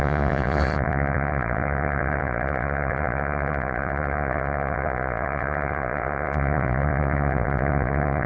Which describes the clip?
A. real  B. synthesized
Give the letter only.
B